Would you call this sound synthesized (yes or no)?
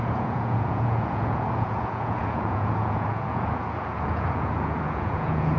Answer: yes